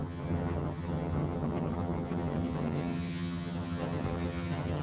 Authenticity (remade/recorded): remade